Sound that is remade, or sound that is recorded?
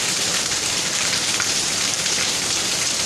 remade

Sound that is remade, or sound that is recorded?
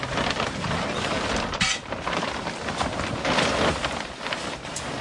remade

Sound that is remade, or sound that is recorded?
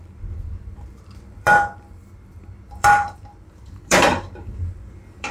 remade